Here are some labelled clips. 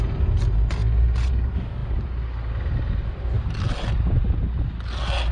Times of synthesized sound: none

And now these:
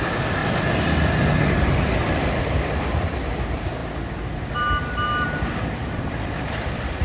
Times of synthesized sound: 0.0-0.4 (vocoder, BigVGAN v2); 2.4-3.8; 5.6-7.0

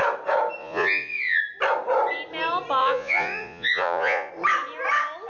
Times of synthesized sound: 0.6-1.4 (vocoder, Vocos); 2.8-4.3